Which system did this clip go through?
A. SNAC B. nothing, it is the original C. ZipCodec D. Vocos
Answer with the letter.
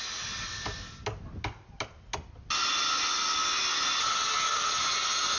B